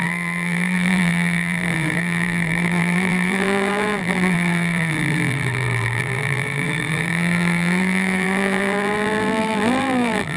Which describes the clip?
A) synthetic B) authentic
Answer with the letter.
A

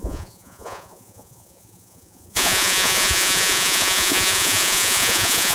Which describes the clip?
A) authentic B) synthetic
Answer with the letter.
B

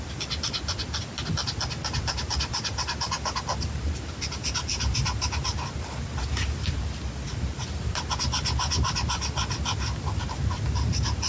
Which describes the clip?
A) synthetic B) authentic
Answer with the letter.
B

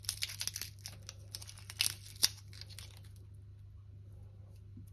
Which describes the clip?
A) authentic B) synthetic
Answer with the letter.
A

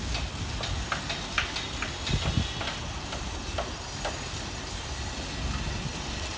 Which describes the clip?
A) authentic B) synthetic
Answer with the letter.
A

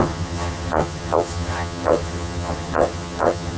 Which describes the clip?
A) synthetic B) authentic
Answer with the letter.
A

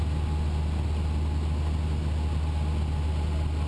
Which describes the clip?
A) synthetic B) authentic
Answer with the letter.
B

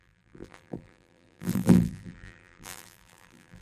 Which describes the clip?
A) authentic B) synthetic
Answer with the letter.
B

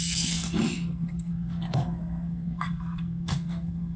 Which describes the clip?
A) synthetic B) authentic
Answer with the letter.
A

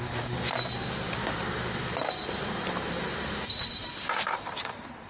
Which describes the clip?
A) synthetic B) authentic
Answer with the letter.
A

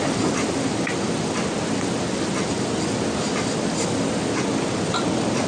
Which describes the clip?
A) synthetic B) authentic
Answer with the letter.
B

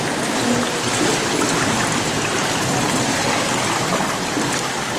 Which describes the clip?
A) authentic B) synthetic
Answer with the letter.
A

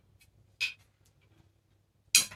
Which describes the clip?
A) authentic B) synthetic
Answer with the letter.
A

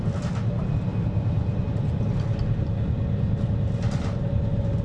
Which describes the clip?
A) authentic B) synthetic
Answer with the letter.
A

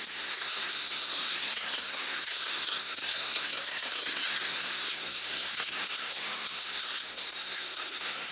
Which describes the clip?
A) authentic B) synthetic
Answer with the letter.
B